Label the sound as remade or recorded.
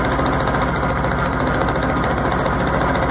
recorded